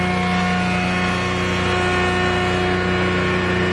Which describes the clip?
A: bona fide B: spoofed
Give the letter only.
A